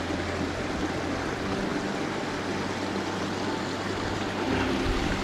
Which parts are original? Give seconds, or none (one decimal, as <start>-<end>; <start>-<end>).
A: 0.0-5.2